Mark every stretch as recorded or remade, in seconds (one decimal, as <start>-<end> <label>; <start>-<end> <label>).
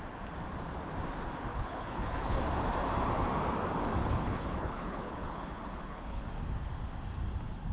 0.0-1.5 recorded; 1.5-2.4 remade; 2.4-4.0 recorded; 4.0-6.3 remade; 6.3-7.7 recorded